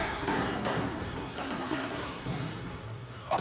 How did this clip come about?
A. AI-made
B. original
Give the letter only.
A